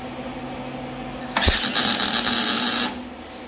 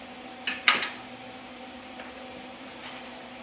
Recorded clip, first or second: first